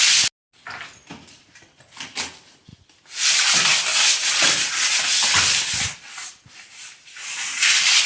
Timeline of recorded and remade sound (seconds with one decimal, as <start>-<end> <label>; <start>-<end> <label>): 0.0-8.1 recorded